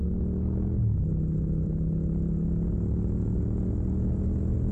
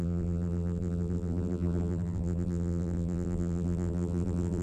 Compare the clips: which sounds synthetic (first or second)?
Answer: second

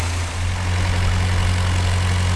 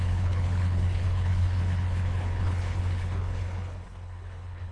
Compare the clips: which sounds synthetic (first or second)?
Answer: second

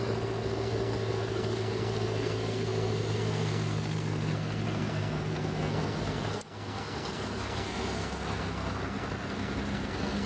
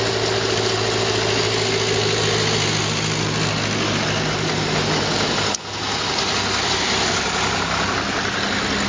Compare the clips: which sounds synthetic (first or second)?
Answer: first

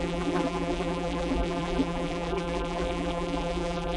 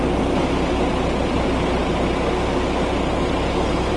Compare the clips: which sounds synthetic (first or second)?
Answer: first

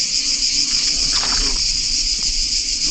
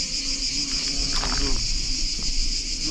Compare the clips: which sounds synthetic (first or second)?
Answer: first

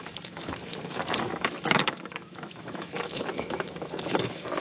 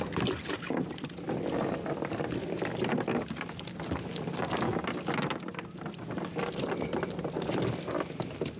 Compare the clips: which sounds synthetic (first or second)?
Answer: first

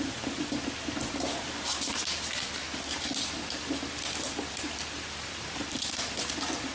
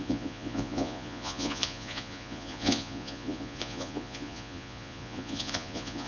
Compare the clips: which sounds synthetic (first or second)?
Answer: second